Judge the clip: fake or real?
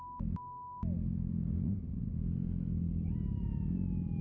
real